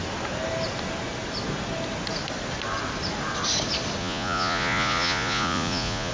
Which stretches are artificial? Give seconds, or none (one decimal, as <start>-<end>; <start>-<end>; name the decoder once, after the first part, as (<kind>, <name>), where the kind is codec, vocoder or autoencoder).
4.0-6.1 (vocoder, Vocos)